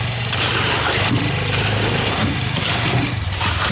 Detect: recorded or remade remade